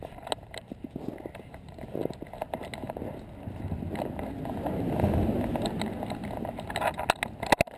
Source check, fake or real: real